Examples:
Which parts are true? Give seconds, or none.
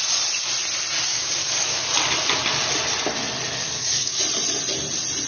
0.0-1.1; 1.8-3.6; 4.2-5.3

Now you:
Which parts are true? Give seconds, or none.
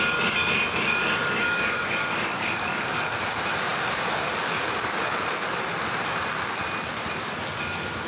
0.0-1.2; 3.1-8.1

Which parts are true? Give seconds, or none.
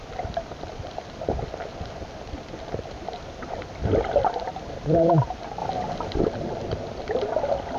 0.0-7.8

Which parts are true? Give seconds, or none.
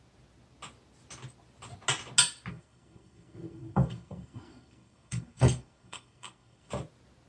0.0-2.5; 6.7-7.3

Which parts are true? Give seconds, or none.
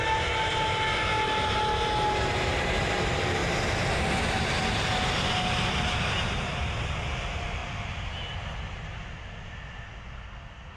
0.0-10.8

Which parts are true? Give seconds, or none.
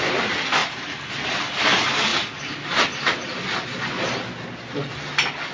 0.0-5.5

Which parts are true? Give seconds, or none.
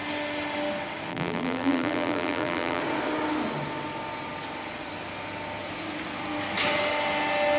0.0-1.1; 2.8-7.6